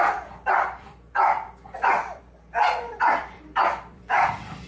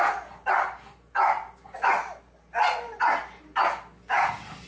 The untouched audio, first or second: second